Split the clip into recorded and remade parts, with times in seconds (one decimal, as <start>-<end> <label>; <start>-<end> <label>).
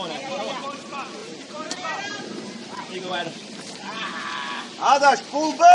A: 0.0-1.2 recorded; 1.2-4.6 remade; 4.6-5.7 recorded